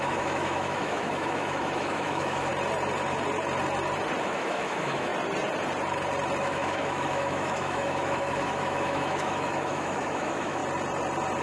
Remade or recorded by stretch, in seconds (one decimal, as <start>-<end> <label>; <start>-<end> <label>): 0.0-2.5 remade; 2.5-4.2 recorded; 4.2-5.1 remade; 5.1-6.4 recorded; 6.4-10.6 remade; 10.6-11.4 recorded